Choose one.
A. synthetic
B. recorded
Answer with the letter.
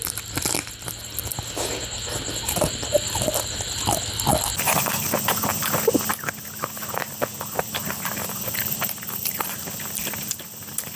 B